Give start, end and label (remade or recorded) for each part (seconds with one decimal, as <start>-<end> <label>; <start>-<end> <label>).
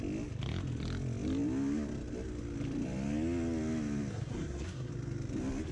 0.0-4.1 recorded; 4.1-4.9 remade; 4.9-5.7 recorded